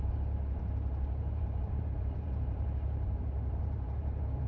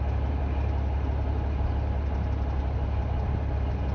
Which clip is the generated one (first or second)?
first